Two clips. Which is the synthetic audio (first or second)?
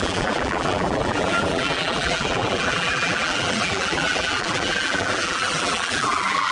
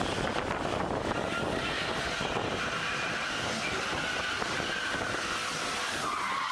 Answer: first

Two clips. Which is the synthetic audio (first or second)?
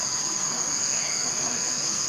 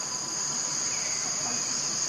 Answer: first